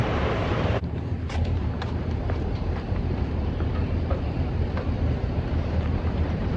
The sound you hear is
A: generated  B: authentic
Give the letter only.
A